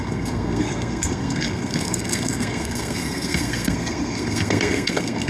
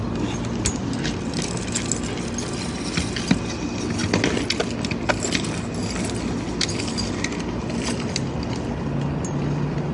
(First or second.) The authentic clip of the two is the second